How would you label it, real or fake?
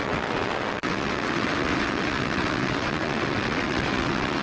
fake